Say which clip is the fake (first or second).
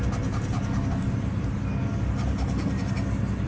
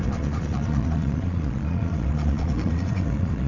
second